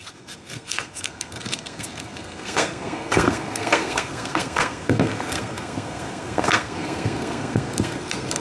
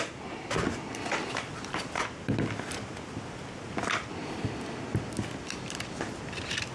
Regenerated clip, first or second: first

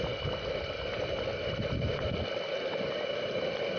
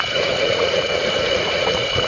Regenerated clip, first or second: second